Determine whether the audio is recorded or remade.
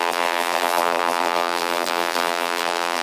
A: remade